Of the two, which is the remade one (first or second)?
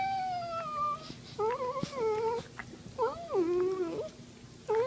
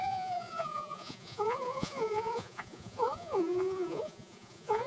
second